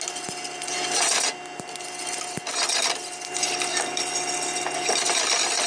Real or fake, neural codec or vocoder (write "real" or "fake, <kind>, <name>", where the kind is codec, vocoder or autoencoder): real